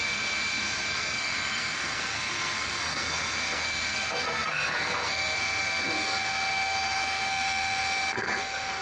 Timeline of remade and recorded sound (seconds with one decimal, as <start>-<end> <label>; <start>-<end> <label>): 0.0-8.8 remade